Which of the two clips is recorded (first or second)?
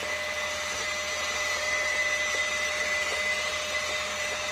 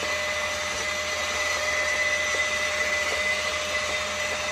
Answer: first